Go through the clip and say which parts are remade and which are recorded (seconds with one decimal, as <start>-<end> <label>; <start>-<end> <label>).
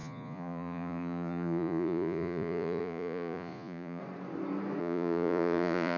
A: 0.0-4.0 remade; 4.0-4.8 recorded; 4.8-6.0 remade